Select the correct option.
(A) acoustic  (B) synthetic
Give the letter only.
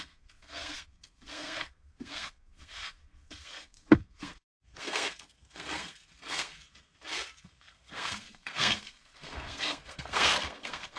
B